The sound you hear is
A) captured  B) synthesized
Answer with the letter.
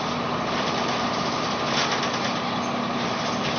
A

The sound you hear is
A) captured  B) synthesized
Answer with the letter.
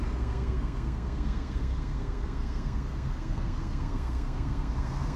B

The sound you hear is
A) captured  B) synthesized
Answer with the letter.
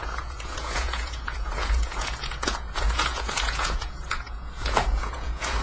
B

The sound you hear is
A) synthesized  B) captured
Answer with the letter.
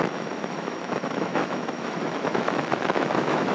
A